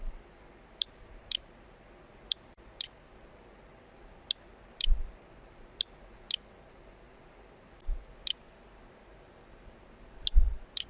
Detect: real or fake real